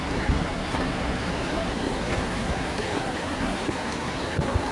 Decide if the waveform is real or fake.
fake